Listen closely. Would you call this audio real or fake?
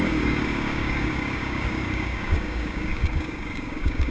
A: fake